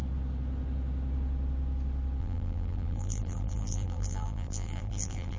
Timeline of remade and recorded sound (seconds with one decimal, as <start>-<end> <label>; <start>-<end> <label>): 0.0-2.2 recorded; 2.2-5.4 remade